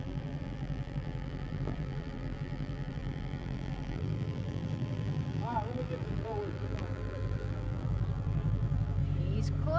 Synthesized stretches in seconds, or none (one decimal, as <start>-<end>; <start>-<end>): 0.0-9.0